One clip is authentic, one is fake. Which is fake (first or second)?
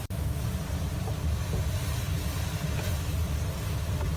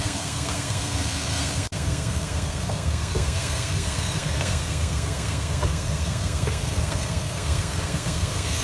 second